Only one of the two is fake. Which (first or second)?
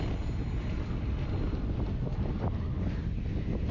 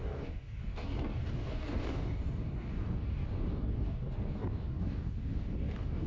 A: second